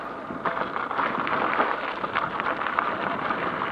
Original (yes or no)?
no